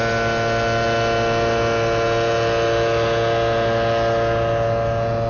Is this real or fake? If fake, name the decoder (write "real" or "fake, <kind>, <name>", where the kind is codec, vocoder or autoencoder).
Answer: real